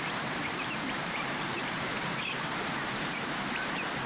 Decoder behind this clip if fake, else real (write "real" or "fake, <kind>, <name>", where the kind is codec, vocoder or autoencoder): fake, vocoder, BigVGAN v2